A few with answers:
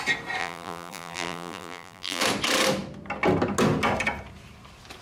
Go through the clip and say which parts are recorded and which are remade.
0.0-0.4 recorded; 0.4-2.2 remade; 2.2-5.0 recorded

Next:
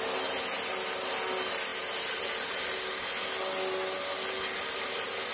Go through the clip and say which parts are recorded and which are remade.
0.0-5.3 recorded

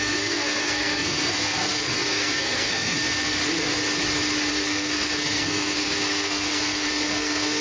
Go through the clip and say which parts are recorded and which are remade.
0.0-3.4 remade; 3.4-4.5 recorded; 4.5-7.6 remade